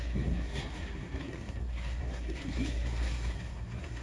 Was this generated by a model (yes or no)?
yes